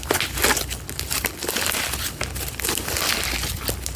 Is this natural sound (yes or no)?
yes